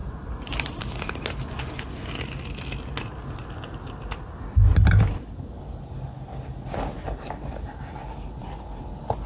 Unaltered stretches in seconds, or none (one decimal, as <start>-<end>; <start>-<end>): 1.6-9.3